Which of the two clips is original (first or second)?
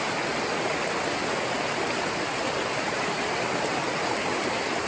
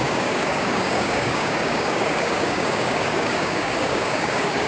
first